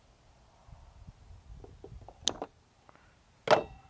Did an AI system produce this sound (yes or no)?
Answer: no